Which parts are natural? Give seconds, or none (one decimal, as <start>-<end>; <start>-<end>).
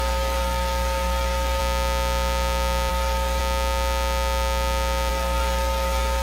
1.6-2.9; 3.4-5.1